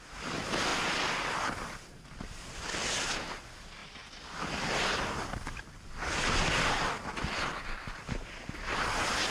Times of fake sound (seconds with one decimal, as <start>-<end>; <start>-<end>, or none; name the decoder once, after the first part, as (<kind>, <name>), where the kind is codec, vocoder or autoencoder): none